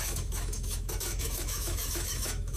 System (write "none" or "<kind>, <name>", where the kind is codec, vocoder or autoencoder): autoencoder, DAC-VAE